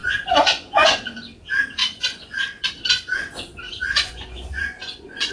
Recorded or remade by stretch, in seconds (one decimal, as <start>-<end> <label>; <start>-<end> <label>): 0.0-1.2 remade; 1.2-1.8 recorded; 1.8-5.3 remade